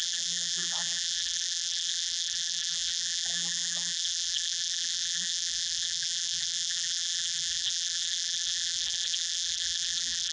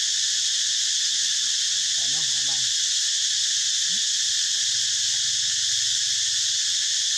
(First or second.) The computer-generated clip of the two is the first